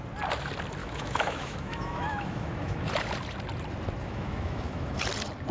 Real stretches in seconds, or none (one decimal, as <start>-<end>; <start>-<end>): 0.0-0.8; 2.9-4.0; 5.0-5.5

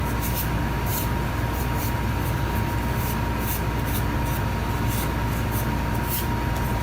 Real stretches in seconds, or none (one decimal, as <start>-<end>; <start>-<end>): 0.0-0.9; 3.1-6.8

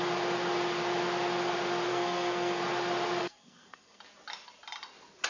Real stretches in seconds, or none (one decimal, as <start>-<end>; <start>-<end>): 0.0-1.9; 2.6-3.2; 4.0-5.3